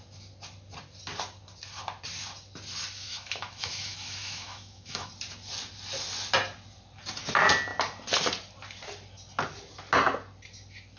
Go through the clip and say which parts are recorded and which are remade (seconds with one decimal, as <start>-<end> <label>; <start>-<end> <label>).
0.0-3.1 recorded; 3.1-5.1 remade; 5.1-11.0 recorded